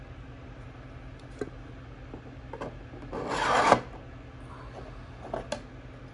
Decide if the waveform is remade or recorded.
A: recorded